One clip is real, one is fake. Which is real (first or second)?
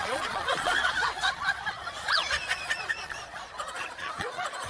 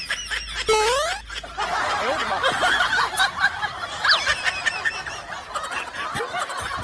second